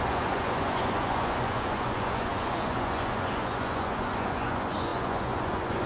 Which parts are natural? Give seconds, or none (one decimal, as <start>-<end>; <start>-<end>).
none